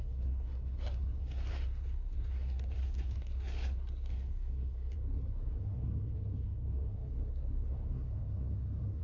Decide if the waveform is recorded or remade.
remade